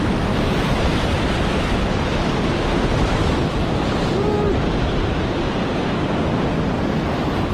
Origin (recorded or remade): recorded